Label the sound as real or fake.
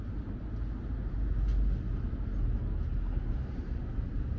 real